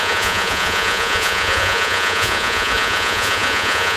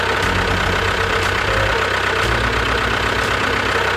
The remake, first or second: first